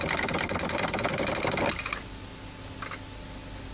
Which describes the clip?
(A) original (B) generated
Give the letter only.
A